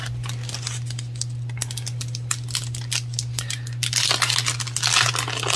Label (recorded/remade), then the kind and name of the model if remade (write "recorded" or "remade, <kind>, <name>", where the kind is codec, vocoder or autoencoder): recorded